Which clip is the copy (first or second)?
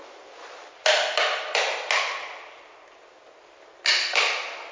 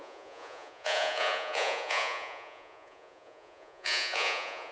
second